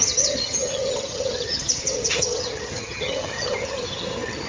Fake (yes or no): yes